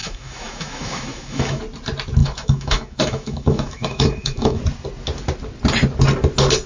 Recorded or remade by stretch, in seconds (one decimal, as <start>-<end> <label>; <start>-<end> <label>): 0.0-1.6 remade; 1.6-2.2 recorded; 2.2-4.6 remade; 4.6-6.7 recorded